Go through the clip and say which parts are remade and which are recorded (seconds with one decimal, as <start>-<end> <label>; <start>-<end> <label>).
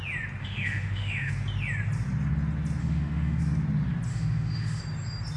0.0-0.4 recorded; 0.4-1.3 remade; 1.3-2.8 recorded; 2.8-3.4 remade; 3.4-4.1 recorded; 4.1-4.8 remade; 4.8-5.4 recorded